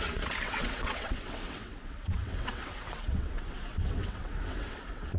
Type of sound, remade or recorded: remade